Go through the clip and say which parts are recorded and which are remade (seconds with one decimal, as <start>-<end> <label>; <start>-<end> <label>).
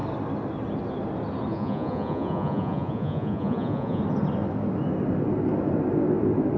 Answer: 0.0-1.5 recorded; 1.5-4.0 remade; 4.0-6.6 recorded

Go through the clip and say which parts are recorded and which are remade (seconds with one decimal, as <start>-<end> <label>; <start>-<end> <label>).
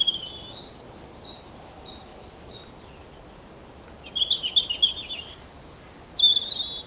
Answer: 0.0-6.9 recorded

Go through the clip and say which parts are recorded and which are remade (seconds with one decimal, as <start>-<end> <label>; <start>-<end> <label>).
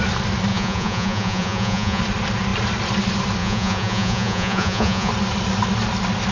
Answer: 0.0-0.5 recorded; 0.5-2.0 remade; 2.0-3.4 recorded; 3.4-5.1 remade; 5.1-6.3 recorded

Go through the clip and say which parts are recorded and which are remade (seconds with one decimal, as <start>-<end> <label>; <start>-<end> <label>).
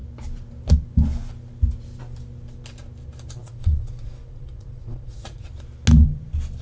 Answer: 0.0-3.4 recorded; 3.4-5.5 remade; 5.5-6.6 recorded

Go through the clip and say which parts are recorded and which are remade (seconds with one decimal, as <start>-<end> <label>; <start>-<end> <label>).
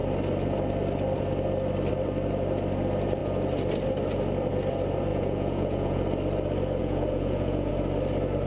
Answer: 0.0-5.1 recorded; 5.1-6.0 remade; 6.0-6.8 recorded; 6.8-7.7 remade; 7.7-8.5 recorded